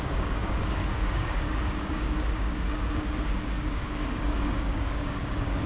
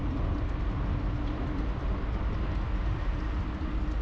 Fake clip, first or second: first